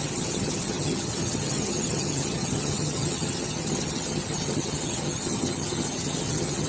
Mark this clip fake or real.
fake